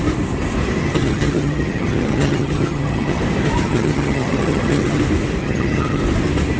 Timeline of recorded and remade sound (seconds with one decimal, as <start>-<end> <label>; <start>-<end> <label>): 0.0-0.8 recorded; 0.8-3.2 remade; 3.2-3.6 recorded; 3.6-5.0 remade; 5.0-5.4 recorded; 5.4-6.0 remade; 6.0-6.6 recorded